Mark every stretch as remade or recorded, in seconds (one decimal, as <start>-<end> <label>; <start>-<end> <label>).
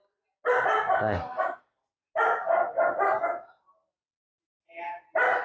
0.0-5.4 recorded